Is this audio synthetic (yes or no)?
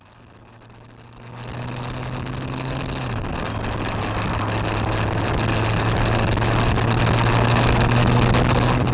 no